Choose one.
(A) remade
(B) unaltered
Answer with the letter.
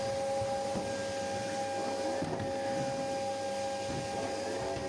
B